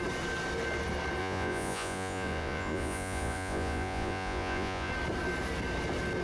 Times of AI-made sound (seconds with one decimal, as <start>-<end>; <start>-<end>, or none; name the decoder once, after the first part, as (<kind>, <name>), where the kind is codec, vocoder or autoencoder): 1.2-4.9 (vocoder, Vocos)

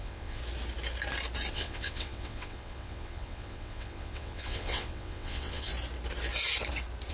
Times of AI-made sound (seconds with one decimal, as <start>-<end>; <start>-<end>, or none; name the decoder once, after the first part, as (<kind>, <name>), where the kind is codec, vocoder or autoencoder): 0.0-0.4 (vocoder, WaveNeXt); 1.5-5.7

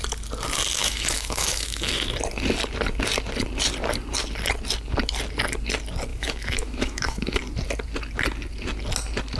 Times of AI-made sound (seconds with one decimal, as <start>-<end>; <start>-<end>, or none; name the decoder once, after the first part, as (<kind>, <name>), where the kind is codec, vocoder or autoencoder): 0.8-1.9 (autoencoder, DAC-VAE); 6.1-7.4

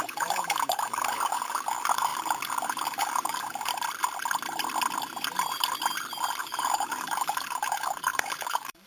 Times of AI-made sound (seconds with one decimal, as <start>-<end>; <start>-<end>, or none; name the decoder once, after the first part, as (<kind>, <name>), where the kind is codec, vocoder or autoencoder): 0.0-3.7 (codec, DAC); 6.4-8.9

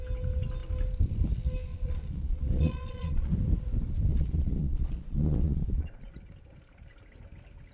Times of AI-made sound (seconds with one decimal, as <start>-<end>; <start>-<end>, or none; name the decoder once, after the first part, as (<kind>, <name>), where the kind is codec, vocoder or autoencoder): 1.7-3.3 (vocoder, Vocos); 4.1-6.1